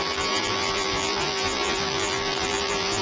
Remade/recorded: remade